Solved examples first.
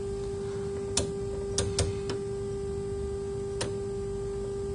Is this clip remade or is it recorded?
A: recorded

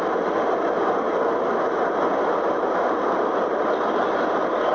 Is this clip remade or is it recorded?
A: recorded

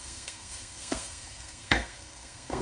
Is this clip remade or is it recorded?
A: remade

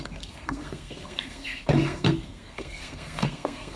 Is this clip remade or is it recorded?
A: remade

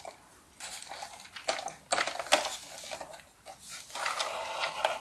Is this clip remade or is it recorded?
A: recorded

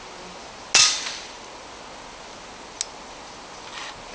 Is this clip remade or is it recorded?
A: recorded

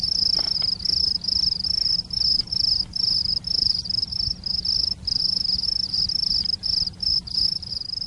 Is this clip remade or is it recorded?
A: recorded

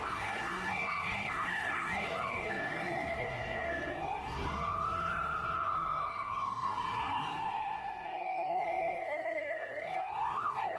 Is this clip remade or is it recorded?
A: remade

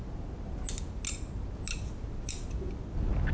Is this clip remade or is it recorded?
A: recorded